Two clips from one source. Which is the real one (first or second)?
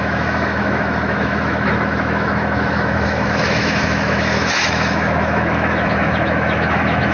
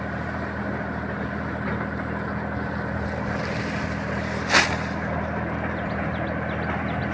second